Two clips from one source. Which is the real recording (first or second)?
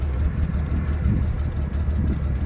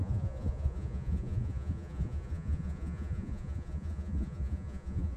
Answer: first